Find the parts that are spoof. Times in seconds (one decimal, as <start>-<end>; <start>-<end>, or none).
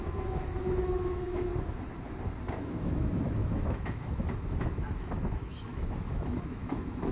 0.0-1.5; 2.6-7.1